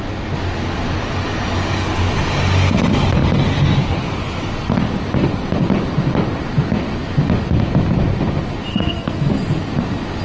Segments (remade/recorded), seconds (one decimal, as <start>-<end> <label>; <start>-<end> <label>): 0.0-8.7 recorded; 8.7-9.3 remade; 9.3-10.2 recorded